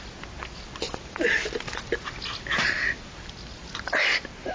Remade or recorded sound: recorded